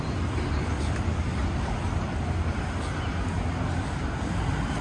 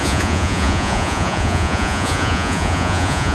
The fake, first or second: second